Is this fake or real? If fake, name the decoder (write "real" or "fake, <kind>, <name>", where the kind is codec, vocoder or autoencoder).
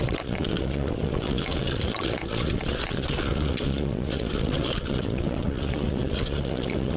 fake, vocoder, WaveNeXt